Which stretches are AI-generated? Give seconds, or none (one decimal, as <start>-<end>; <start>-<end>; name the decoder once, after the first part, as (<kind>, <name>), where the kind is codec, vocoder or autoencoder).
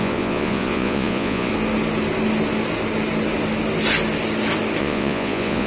0.0-1.5 (vocoder, Vocos); 4.8-5.7